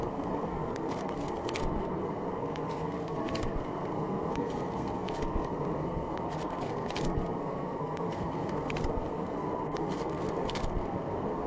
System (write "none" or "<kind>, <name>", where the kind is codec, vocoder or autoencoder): codec, SNAC